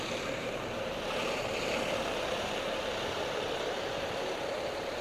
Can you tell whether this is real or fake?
fake